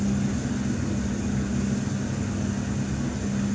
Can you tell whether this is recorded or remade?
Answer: recorded